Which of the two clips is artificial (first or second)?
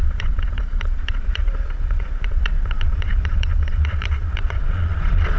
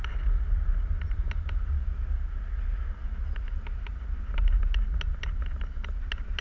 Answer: first